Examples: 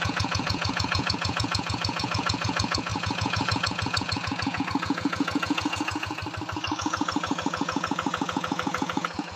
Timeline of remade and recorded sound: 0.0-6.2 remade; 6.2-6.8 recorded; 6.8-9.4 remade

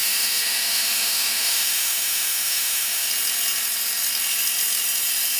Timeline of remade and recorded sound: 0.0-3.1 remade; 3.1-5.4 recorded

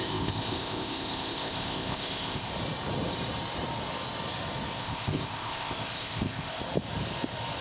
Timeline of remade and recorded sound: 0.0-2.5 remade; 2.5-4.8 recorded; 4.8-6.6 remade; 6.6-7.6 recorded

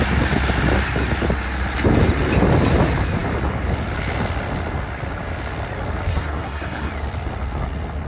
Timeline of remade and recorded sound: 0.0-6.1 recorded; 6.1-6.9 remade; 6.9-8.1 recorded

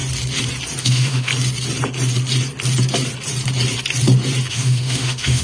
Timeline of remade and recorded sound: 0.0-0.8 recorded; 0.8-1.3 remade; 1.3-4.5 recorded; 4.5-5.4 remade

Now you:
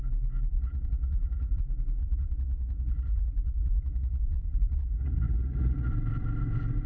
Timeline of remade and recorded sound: 0.0-0.5 recorded; 0.5-1.6 remade; 1.6-2.0 recorded; 2.0-5.9 remade; 5.9-6.9 recorded